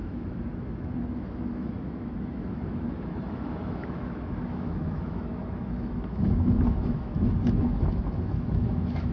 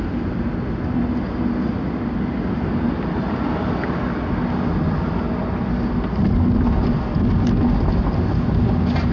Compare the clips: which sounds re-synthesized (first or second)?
first